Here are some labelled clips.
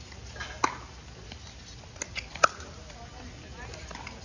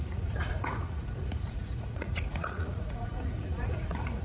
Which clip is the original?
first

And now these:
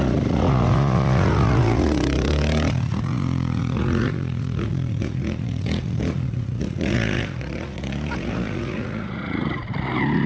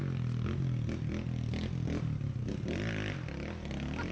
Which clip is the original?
second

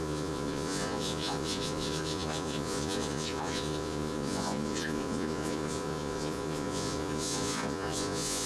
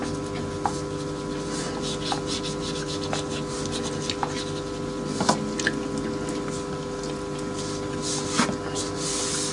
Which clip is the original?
second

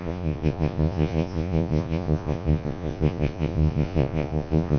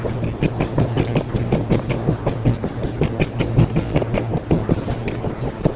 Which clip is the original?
second